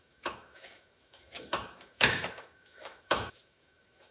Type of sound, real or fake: fake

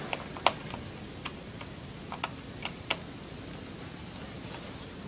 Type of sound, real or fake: real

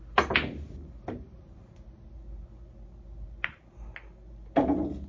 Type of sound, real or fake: real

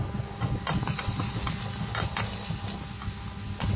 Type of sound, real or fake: real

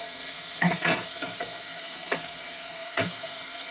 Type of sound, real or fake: fake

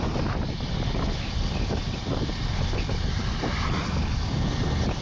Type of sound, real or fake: real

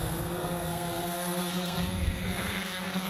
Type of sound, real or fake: fake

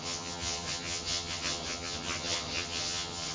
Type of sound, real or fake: fake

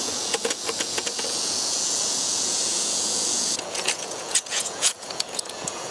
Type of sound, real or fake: fake